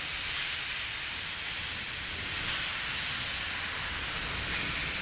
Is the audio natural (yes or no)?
yes